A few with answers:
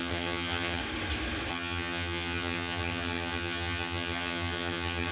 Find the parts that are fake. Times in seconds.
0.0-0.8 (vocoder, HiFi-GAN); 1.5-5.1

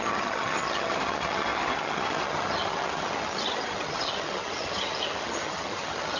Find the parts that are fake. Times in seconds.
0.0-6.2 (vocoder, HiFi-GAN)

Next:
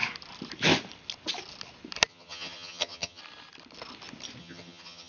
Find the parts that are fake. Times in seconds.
2.1-3.2 (vocoder, HiFi-GAN); 4.4-5.1